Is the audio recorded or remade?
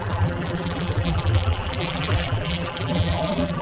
remade